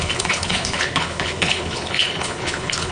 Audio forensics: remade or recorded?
remade